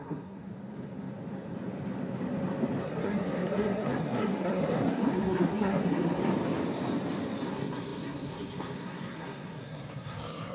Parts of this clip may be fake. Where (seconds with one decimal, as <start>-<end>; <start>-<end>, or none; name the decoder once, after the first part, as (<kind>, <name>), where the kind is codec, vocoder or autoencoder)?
0.0-0.5 (codec, SNAC); 2.8-6.2; 7.5-10.5